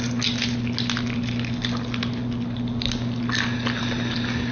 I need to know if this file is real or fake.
real